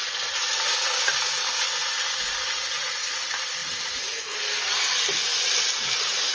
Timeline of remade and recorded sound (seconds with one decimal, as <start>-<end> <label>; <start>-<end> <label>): 0.0-1.4 recorded; 1.4-3.0 remade; 3.0-3.6 recorded; 3.6-4.2 remade; 4.2-5.3 recorded; 5.3-5.8 remade; 5.8-6.3 recorded